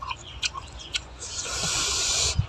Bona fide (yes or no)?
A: no